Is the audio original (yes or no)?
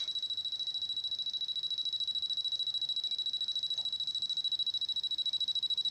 yes